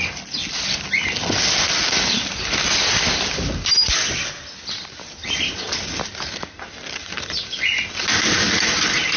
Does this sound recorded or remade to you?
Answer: recorded